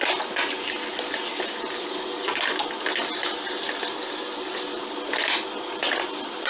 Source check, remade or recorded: recorded